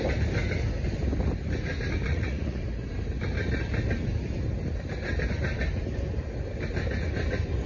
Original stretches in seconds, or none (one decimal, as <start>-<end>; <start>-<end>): 0.0-2.1; 2.6-7.7